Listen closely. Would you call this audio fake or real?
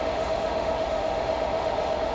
fake